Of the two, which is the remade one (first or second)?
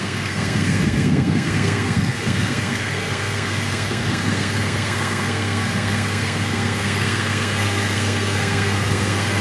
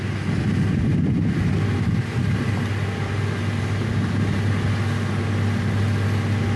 first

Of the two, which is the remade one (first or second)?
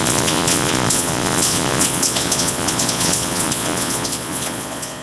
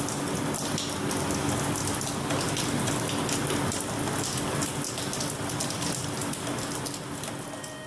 first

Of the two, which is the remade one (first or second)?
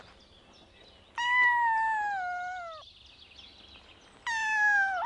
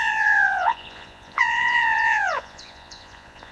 second